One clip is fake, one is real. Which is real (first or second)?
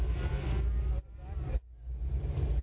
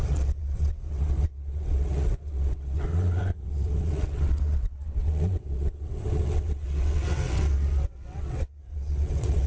first